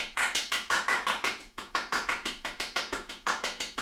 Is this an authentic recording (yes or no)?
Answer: no